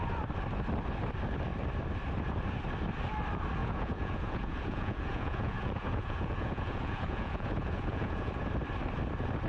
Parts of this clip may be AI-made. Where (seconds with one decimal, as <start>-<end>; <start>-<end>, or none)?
3.6-8.3